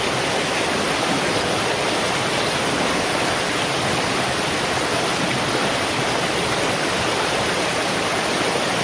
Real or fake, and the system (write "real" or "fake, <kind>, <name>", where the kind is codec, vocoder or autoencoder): real